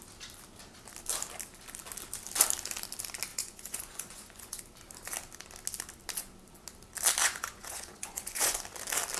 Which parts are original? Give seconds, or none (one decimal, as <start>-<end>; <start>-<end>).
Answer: 0.0-3.3; 4.6-7.2; 8.6-9.2